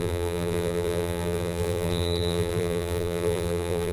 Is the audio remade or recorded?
remade